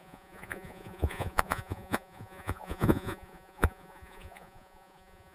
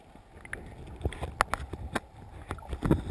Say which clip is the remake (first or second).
first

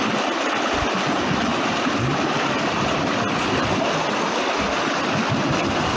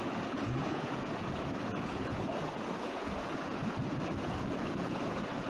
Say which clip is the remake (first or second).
second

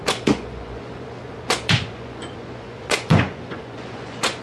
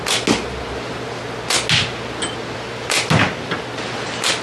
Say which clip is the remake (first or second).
first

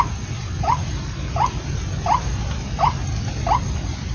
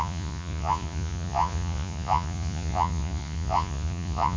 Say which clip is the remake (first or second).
second